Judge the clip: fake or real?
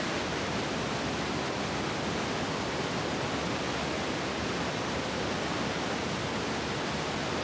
real